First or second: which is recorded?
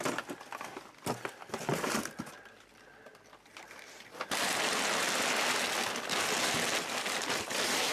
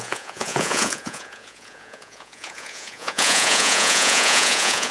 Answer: first